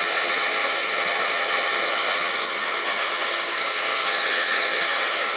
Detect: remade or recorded remade